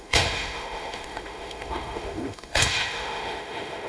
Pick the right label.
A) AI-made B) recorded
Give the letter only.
A